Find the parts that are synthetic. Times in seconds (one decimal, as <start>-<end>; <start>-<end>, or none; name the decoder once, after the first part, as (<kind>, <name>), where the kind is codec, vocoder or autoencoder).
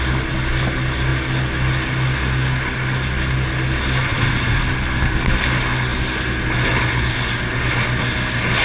4.1-4.6 (vocoder, Vocos)